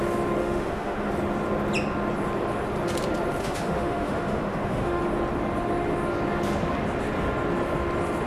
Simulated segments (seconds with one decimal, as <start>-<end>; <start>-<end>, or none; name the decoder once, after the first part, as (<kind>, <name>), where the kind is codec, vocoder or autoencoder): 0.4-1.1 (autoencoder, DAC-VAE); 3.4-5.0